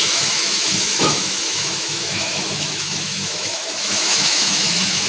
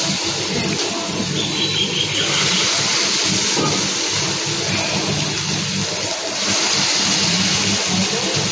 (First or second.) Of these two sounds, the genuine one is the second